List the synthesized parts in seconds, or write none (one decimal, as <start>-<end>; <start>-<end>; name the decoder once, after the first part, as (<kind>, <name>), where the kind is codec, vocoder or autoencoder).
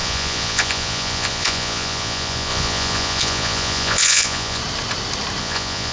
0.0-4.6 (vocoder, Vocos); 5.4-5.9